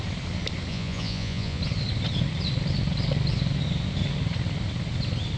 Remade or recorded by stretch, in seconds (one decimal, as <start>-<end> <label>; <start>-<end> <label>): 0.0-0.7 recorded; 0.7-1.6 remade; 1.6-5.4 recorded